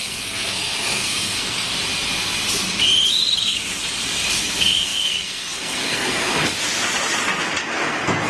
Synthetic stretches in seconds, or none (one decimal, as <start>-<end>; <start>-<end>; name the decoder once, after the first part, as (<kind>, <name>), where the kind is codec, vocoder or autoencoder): 0.0-1.7 (codec, SNAC); 3.4-3.8; 4.4-6.4; 7.6-8.3